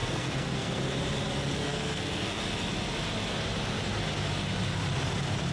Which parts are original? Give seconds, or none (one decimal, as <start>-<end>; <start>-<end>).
0.8-1.6; 2.4-5.5